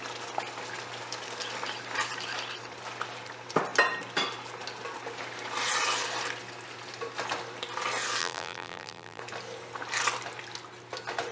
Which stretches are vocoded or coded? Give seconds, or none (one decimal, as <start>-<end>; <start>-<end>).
8.2-9.2